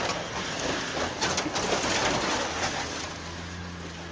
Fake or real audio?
real